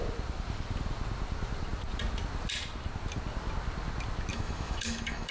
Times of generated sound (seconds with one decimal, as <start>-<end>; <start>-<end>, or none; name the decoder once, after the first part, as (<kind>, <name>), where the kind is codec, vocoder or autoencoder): 4.3-5.3 (autoencoder, DAC-VAE)